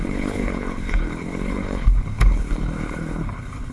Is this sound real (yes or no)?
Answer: no